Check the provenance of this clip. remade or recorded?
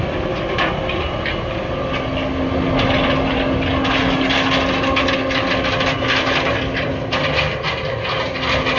recorded